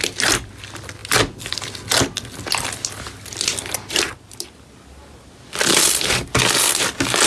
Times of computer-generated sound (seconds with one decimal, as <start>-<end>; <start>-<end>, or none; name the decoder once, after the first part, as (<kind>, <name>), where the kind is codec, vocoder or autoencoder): none